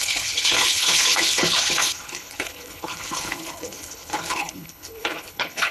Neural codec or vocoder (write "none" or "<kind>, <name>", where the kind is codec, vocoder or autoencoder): codec, HILCodec